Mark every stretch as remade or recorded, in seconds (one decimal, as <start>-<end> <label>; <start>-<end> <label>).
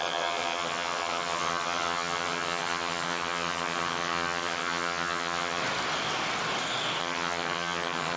0.0-5.6 remade; 5.6-7.0 recorded; 7.0-8.2 remade